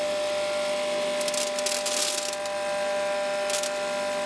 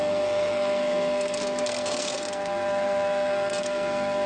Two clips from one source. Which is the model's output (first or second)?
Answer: second